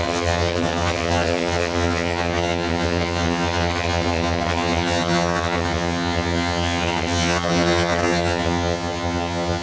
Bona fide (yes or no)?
no